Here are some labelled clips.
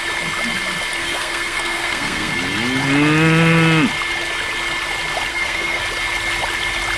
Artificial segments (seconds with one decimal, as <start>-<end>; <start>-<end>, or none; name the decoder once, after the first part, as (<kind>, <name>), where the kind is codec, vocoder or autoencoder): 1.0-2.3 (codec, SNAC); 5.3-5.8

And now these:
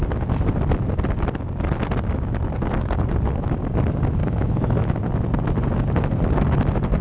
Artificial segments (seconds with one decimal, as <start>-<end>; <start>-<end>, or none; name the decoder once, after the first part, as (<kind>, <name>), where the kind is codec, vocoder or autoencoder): 4.2-5.0 (autoencoder, DAC-VAE)

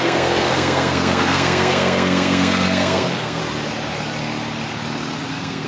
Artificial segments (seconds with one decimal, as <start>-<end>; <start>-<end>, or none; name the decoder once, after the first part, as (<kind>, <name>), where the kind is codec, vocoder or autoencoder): 0.0-3.4 (codec, SNAC); 5.3-5.7

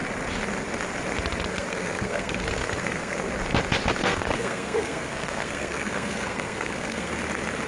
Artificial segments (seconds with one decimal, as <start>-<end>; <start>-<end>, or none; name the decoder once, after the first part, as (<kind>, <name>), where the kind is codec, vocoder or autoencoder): 1.5-3.3 (codec, SNAC); 4.0-7.1

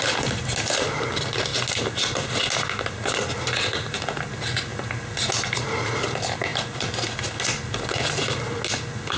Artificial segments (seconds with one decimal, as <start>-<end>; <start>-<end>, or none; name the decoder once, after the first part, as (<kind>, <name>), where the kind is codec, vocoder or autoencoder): none